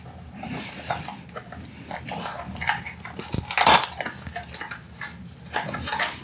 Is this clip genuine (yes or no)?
yes